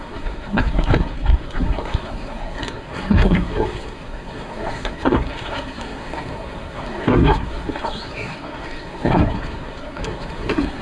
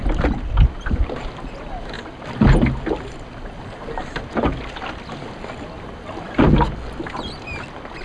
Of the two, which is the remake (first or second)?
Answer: first